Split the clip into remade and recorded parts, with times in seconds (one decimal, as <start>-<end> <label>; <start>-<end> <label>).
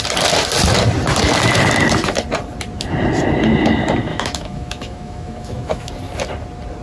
0.0-4.1 recorded; 4.1-5.9 remade; 5.9-6.8 recorded